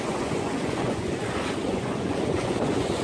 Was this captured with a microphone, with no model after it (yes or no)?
no